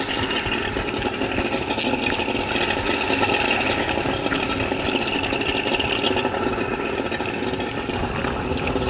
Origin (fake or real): real